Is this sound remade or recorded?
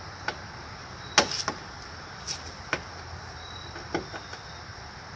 recorded